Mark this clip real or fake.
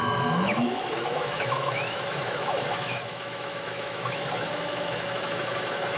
fake